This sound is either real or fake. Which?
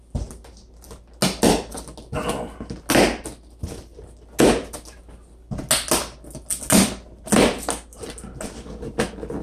real